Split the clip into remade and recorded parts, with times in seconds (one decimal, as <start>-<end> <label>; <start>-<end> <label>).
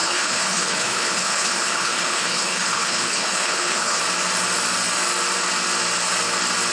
0.0-4.0 remade; 4.0-6.7 recorded